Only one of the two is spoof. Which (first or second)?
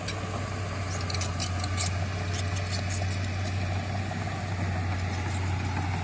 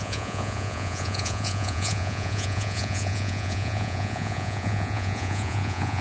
second